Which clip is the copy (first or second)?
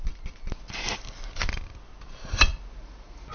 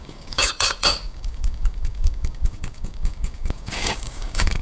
second